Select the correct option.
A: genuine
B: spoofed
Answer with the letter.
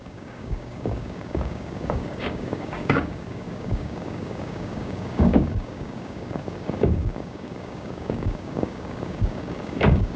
B